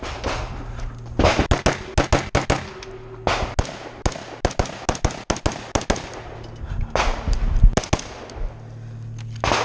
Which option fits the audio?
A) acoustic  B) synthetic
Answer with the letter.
A